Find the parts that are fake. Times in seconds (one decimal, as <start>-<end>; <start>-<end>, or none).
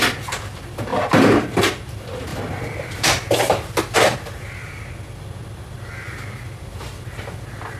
0.9-1.6; 2.3-3.4